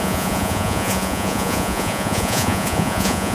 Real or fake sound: fake